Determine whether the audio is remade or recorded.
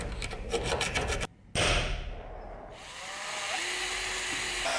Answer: recorded